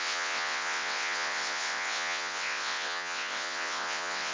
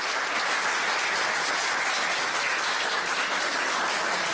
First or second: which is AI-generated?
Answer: first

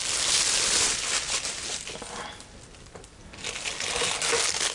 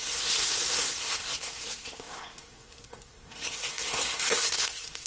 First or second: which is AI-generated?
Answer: second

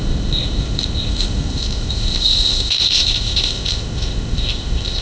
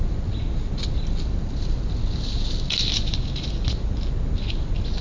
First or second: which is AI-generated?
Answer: first